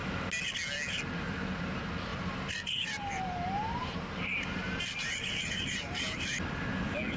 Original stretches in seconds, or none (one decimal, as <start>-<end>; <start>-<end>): 0.0-2.1; 6.4-7.2